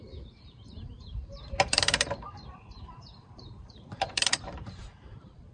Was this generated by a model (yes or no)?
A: yes